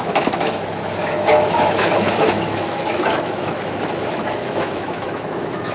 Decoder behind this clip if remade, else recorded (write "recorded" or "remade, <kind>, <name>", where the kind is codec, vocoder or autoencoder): remade, autoencoder, DAC-VAE